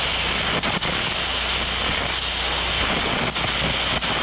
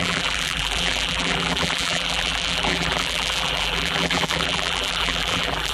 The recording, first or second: first